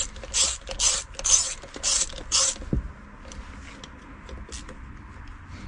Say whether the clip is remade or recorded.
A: recorded